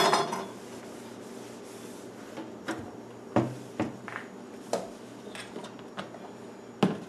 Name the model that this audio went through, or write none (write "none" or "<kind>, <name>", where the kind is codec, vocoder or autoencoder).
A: none